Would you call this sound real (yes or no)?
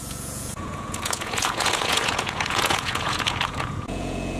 no